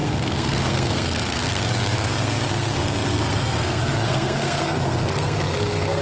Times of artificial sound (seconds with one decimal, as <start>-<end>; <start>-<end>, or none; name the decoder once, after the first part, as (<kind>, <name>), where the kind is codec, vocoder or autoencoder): 0.0-6.0 (codec, SNAC)